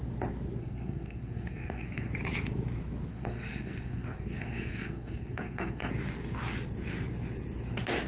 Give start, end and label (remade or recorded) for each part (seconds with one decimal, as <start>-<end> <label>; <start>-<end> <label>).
0.0-0.6 recorded; 0.6-2.1 remade; 2.1-3.1 recorded; 3.1-5.9 remade; 5.9-8.1 recorded